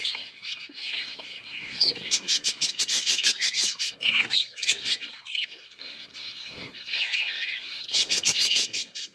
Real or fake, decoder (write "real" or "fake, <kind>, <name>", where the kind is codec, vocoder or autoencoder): fake, codec, SNAC